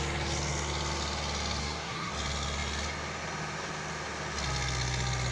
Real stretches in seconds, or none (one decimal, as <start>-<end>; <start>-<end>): 0.0-1.6; 2.1-5.3